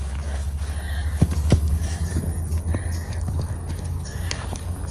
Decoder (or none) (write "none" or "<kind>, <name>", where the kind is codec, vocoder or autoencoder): codec, DAC